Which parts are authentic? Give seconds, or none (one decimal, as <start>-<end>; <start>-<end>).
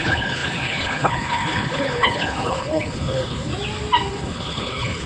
3.5-4.1